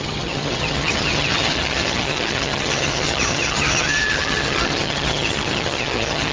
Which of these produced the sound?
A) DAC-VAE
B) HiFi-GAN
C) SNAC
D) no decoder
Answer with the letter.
B